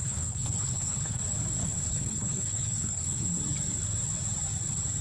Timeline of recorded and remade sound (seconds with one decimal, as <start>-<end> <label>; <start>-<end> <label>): 0.0-1.2 remade; 1.2-1.6 recorded; 1.6-3.4 remade; 3.4-5.0 recorded